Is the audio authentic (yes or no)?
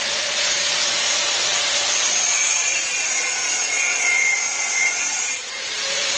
no